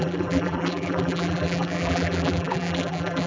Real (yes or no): no